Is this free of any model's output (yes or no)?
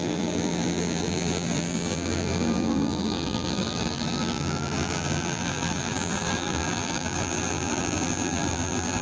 no